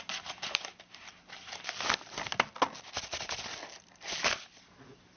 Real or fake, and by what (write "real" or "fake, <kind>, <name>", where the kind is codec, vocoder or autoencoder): real